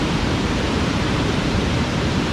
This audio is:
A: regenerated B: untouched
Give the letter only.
A